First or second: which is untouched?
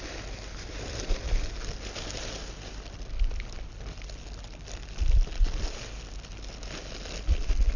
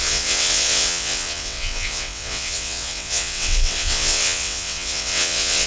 first